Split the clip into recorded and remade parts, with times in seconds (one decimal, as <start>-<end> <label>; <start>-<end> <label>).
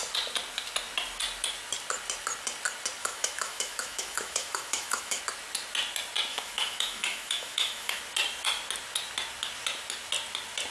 0.0-3.0 recorded; 3.0-5.2 remade; 5.2-6.3 recorded; 6.3-8.0 remade; 8.0-10.7 recorded